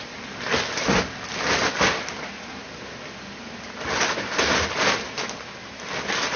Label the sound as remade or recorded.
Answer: recorded